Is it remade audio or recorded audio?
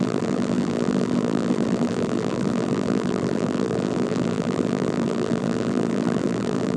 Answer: remade